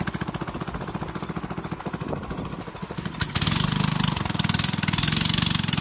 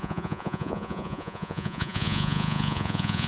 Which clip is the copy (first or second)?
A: second